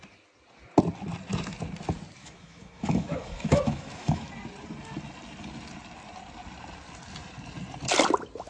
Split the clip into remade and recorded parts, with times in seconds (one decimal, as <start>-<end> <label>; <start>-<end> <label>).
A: 0.0-2.2 recorded; 2.2-4.3 remade; 4.3-8.5 recorded